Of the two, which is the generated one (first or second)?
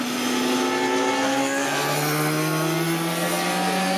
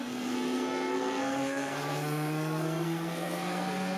second